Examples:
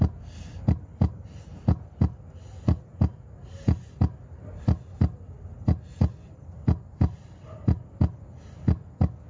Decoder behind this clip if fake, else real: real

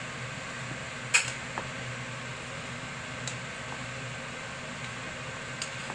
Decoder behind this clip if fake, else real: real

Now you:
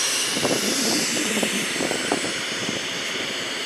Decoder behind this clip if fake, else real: fake, vocoder, BigVGAN v2